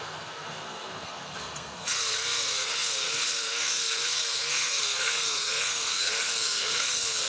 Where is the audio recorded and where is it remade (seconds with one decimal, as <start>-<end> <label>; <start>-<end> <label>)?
0.0-7.3 remade